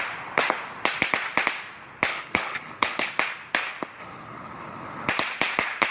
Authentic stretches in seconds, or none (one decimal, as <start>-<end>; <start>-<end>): 0.0-2.1; 3.1-4.0; 5.1-5.9